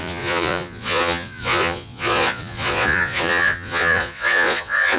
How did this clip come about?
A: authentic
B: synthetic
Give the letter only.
B